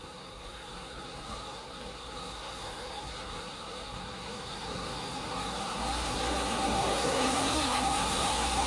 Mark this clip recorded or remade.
remade